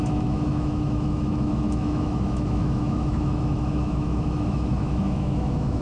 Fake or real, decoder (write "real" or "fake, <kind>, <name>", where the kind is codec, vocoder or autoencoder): fake, autoencoder, DAC-VAE